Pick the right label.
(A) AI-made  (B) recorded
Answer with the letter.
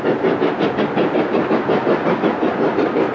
B